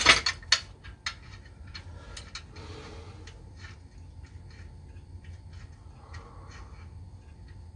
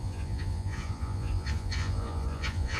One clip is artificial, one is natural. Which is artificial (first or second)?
second